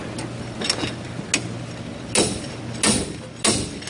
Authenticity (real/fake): real